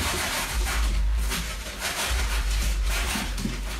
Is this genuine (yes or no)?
no